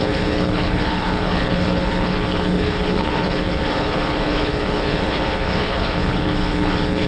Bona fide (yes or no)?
no